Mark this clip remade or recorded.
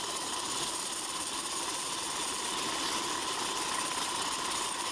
recorded